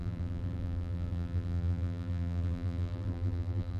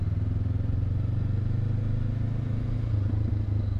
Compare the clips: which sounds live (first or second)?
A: second